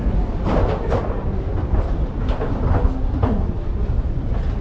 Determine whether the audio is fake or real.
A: real